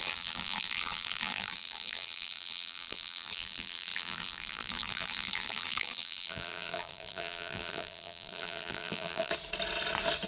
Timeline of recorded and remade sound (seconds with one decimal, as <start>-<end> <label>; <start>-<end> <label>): 0.0-9.3 remade; 9.3-10.3 recorded

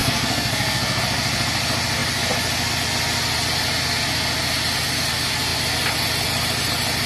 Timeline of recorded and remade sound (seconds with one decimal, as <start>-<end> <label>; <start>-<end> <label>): 0.0-1.0 remade; 1.0-7.1 recorded

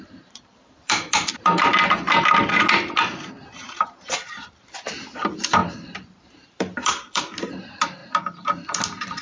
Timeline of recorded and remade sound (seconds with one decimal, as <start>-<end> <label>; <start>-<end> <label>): 0.0-1.7 remade; 1.7-3.4 recorded; 3.4-8.0 remade; 8.0-9.2 recorded